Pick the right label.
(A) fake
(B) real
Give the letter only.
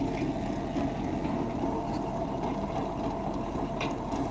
B